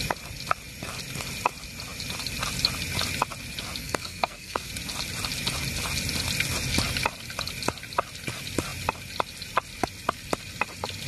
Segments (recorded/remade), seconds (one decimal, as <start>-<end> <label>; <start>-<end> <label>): 0.0-3.8 recorded; 3.8-4.7 remade; 4.7-11.1 recorded